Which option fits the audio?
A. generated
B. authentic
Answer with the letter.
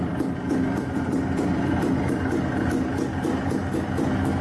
B